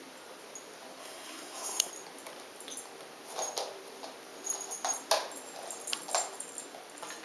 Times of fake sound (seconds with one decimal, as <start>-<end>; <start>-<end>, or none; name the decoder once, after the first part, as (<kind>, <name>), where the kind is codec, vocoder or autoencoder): 1.0-1.9 (codec, SNAC)